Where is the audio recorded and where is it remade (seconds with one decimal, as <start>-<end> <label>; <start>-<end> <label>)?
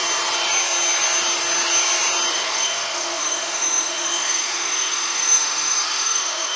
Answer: 0.0-2.3 recorded; 2.3-6.6 remade